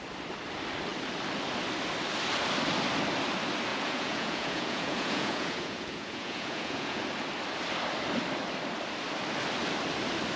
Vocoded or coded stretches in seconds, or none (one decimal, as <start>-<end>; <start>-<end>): 3.7-7.0